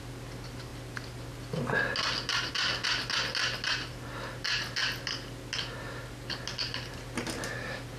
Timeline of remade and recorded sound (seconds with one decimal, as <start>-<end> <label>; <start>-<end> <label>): 0.0-8.0 recorded